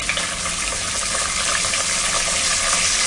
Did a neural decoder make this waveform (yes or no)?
no